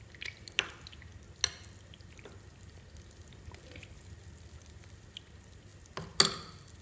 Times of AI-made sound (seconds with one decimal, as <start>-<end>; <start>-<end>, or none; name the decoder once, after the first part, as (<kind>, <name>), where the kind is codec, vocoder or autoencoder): none

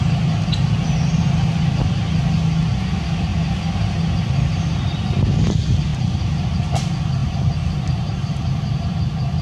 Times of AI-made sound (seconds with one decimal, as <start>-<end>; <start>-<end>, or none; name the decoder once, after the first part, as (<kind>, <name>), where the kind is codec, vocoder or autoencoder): 5.9-6.4 (vocoder, BigVGAN v2); 7.2-8.8

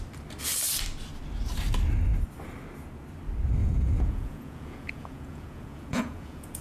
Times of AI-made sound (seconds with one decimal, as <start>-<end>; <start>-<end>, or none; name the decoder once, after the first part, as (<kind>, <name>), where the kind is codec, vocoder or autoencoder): 3.6-6.6 (vocoder, Vocos)

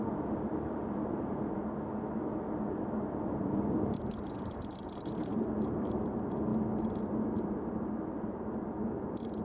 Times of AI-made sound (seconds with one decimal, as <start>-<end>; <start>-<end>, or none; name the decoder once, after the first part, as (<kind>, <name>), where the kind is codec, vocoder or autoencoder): 0.0-1.6 (vocoder, BigVGAN v2); 3.3-6.5; 7.7-9.4